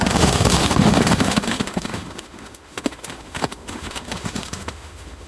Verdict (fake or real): fake